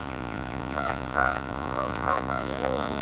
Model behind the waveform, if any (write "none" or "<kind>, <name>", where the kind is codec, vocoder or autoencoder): vocoder, Vocos